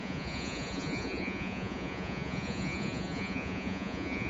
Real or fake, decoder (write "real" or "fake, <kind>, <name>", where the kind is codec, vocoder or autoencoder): fake, vocoder, Vocos